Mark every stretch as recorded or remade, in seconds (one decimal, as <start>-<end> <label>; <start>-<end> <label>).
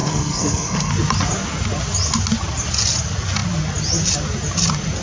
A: 0.0-0.9 remade; 0.9-5.0 recorded